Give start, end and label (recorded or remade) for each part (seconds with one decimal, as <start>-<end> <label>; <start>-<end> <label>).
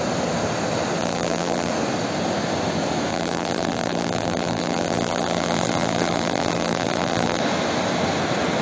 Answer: 0.0-1.0 recorded; 1.0-1.7 remade; 1.7-3.1 recorded; 3.1-7.4 remade; 7.4-8.6 recorded